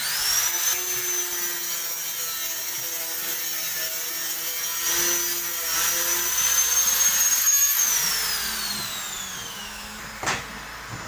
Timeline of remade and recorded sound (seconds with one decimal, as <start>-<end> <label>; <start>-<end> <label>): 0.0-7.4 recorded; 7.4-7.9 remade; 7.9-9.5 recorded; 9.5-10.0 remade; 10.0-11.1 recorded